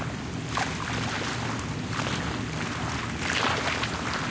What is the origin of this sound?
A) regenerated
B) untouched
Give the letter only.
B